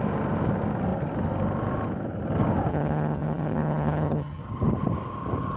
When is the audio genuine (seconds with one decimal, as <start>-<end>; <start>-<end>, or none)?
0.0-2.7; 4.4-5.6